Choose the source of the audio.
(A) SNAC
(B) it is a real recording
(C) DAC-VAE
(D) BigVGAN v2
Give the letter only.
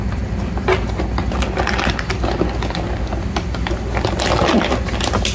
B